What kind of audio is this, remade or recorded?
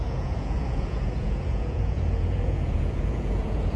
remade